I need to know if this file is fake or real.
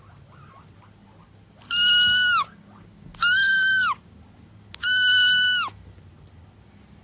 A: real